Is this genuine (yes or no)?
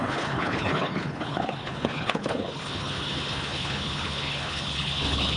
no